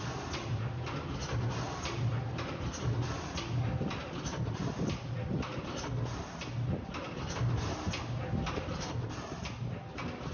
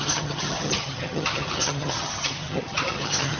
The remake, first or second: second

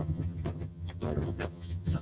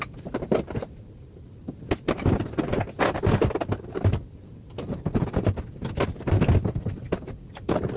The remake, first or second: first